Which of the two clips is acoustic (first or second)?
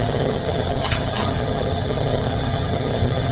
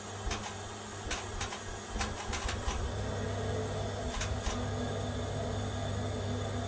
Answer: second